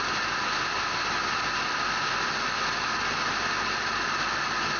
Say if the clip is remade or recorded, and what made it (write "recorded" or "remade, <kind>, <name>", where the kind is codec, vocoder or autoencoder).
recorded